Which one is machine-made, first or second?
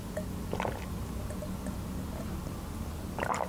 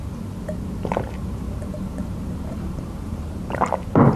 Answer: second